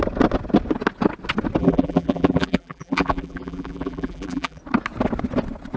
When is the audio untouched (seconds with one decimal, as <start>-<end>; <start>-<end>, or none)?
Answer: 0.0-1.6; 4.6-5.8